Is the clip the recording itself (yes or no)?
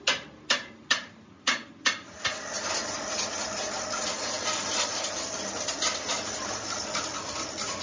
yes